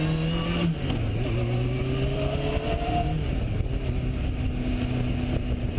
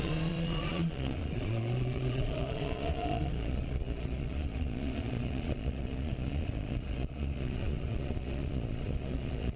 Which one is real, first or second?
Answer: first